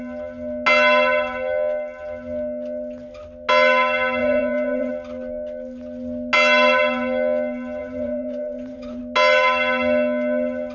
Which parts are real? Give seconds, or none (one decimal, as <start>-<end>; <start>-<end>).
0.0-4.2; 4.9-7.8; 9.0-10.7